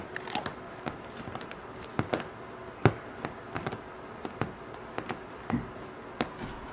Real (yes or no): yes